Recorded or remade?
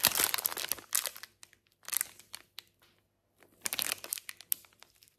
recorded